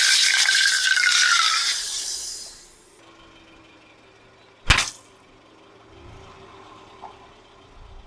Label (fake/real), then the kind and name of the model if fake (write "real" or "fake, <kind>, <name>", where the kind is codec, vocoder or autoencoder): real